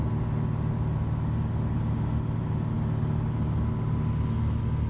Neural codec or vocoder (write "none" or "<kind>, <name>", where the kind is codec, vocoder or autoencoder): none